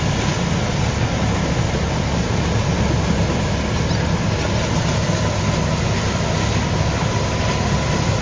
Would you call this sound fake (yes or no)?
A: no